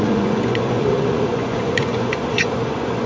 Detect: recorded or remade remade